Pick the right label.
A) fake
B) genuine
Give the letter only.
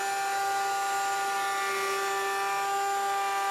B